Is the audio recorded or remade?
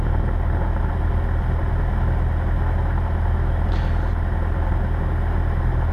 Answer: recorded